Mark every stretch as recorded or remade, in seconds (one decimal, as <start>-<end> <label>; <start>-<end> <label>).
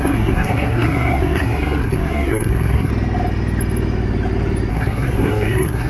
0.0-2.9 remade; 2.9-4.7 recorded; 4.7-5.9 remade